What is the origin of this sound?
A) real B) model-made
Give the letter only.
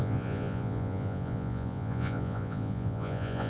B